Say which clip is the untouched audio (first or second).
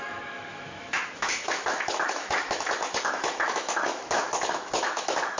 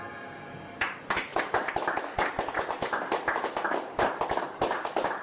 second